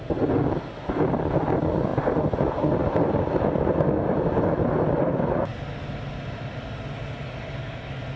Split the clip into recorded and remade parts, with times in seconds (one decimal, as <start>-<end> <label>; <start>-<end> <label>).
0.0-8.2 recorded